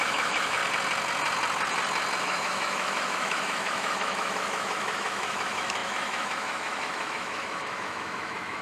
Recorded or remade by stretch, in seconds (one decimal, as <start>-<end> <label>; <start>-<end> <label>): 0.0-0.6 remade; 0.6-2.2 recorded; 2.2-8.6 remade